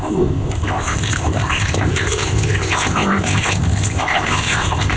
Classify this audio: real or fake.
fake